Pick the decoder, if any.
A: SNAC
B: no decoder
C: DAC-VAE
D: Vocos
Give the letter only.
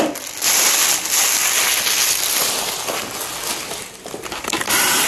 B